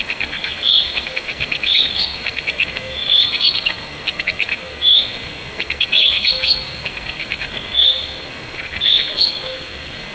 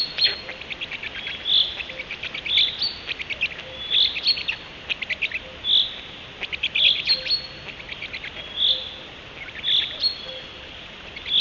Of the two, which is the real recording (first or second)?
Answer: second